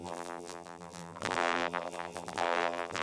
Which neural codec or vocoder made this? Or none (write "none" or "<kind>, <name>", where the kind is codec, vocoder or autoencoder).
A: vocoder, BigVGAN v2